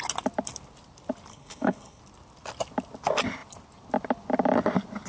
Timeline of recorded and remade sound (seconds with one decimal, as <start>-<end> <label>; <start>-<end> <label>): 0.0-1.3 recorded; 1.3-2.0 remade; 2.0-5.1 recorded